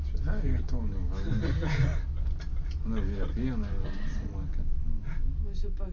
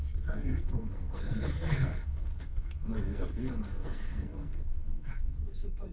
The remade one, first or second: second